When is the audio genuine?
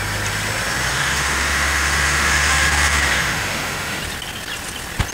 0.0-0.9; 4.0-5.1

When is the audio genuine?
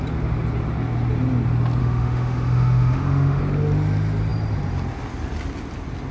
0.0-1.8; 3.4-6.1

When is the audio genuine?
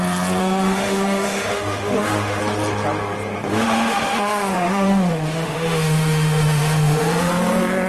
0.0-0.4; 2.4-3.5; 7.3-7.9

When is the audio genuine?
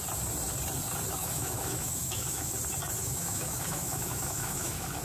0.0-1.2; 2.5-3.0